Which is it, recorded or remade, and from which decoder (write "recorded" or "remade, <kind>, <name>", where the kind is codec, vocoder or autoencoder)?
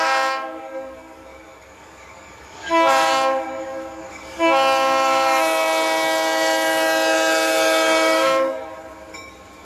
remade, codec, DAC